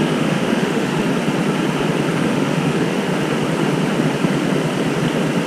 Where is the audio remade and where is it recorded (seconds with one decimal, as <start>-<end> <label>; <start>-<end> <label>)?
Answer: 0.0-0.9 remade; 0.9-2.1 recorded; 2.1-3.1 remade; 3.1-5.5 recorded